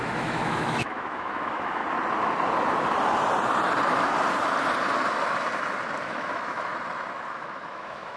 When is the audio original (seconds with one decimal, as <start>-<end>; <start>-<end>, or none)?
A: 1.8-6.0; 6.7-7.3